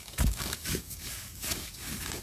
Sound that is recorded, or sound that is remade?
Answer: remade